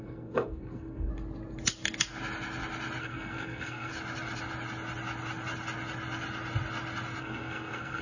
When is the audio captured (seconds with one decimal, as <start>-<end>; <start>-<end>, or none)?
1.1-3.0; 3.9-7.2